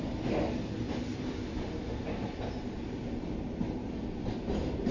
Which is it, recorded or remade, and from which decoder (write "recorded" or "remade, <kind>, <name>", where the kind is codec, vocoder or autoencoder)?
recorded